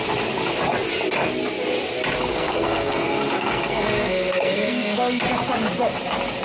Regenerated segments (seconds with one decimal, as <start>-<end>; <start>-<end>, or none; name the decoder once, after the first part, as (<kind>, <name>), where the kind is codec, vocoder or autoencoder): 2.3-5.2 (codec, SNAC)